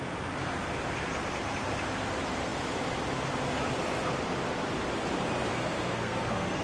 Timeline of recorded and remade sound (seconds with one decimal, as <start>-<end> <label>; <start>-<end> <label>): 0.0-5.5 recorded; 5.5-6.6 remade